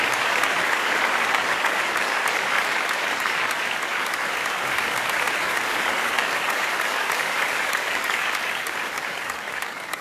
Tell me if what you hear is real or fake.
fake